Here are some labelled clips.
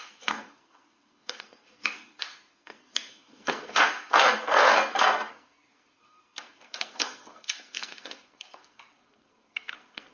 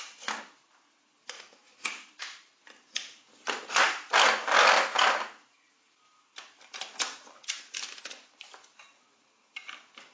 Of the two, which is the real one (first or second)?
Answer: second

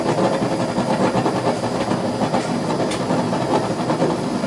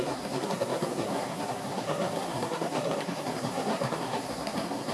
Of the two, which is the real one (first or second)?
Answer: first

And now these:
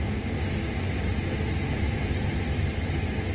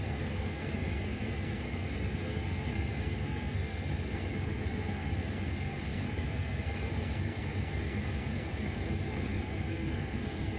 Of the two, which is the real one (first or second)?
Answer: first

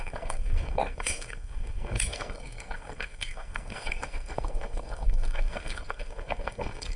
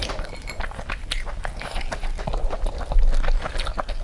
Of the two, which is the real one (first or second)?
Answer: second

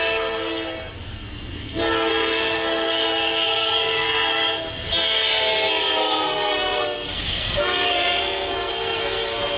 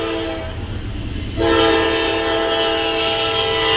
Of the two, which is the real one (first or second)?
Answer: second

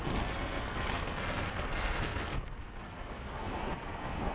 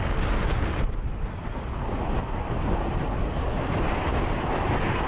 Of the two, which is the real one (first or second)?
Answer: second